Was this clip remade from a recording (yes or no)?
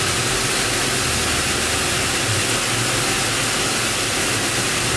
no